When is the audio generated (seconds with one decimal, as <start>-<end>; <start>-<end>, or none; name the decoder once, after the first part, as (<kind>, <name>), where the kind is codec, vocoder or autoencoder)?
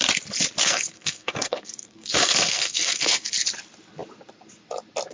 0.6-3.3 (codec, SNAC)